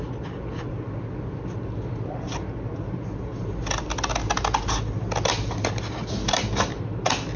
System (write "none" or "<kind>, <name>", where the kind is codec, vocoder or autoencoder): none